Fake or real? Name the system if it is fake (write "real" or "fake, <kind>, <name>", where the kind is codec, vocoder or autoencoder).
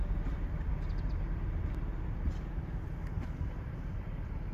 fake, vocoder, BigVGAN v2